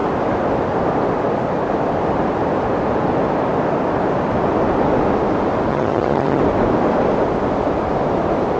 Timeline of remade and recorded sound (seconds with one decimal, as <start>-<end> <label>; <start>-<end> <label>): 0.0-5.7 recorded; 5.7-6.4 remade; 6.4-8.6 recorded